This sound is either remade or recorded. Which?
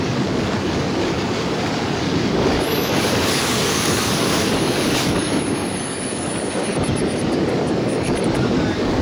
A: remade